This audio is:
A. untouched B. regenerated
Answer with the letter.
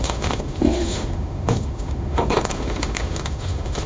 B